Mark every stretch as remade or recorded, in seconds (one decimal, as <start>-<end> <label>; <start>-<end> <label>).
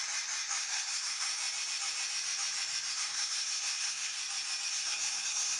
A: 0.0-0.6 recorded; 0.6-1.3 remade; 1.3-2.9 recorded; 2.9-4.2 remade; 4.2-4.7 recorded; 4.7-5.6 remade